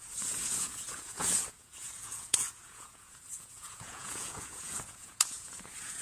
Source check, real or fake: fake